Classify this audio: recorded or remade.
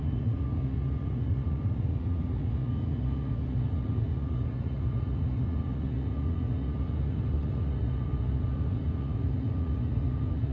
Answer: remade